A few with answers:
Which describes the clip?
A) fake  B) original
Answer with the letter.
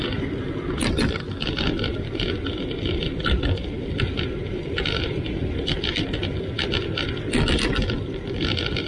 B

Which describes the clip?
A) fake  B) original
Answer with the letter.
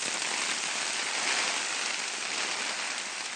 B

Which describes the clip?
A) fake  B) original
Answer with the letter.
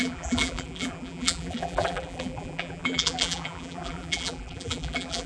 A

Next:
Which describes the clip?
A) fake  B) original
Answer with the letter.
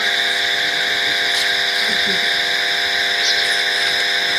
B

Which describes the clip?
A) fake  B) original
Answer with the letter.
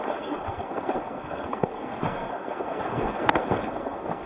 A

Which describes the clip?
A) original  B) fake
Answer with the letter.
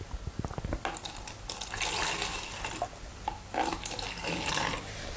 A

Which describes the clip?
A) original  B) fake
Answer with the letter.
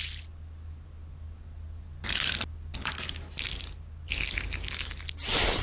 A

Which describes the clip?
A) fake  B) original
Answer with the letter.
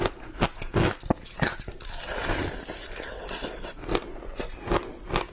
B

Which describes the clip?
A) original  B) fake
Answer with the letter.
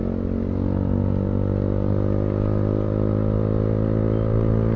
A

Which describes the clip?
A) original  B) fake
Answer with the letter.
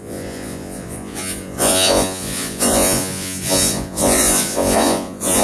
B